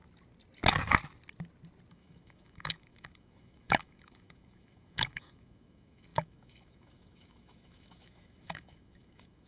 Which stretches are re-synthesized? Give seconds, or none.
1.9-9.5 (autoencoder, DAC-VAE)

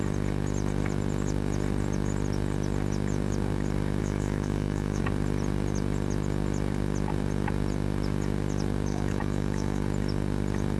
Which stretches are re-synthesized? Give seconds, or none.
4.0-5.0 (autoencoder, DAC-VAE); 8.9-9.8

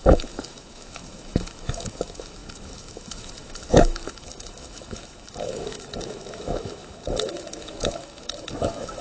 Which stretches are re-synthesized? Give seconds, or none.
0.0-9.0 (autoencoder, DAC-VAE)